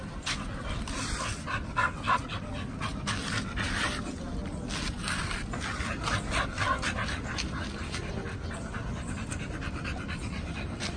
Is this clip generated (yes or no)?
no